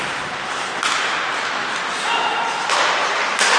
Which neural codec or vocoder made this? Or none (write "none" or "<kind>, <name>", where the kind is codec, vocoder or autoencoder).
none